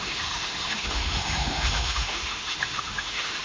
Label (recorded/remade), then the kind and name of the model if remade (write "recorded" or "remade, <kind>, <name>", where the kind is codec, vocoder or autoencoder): remade, autoencoder, DAC-VAE